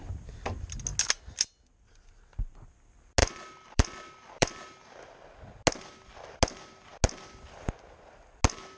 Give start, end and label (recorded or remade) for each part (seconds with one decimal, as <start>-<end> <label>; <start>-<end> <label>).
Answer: 0.0-3.2 recorded; 3.2-5.0 remade; 5.0-8.8 recorded